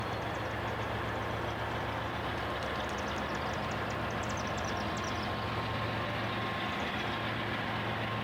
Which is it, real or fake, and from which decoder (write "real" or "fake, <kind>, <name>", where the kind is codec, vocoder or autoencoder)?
real